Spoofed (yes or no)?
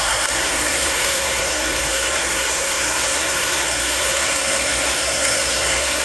yes